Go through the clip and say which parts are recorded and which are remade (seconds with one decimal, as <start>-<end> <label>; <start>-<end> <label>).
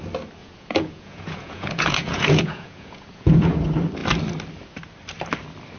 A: 0.0-0.4 recorded; 0.4-3.6 remade; 3.6-5.8 recorded